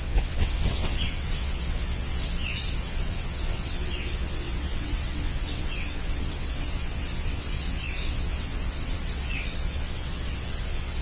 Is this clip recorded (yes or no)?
no